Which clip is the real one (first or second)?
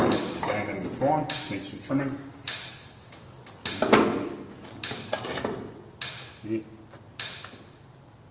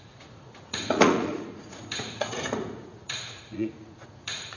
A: first